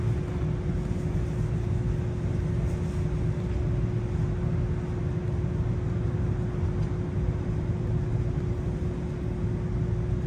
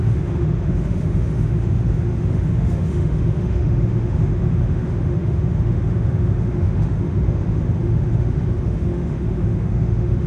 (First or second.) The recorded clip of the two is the first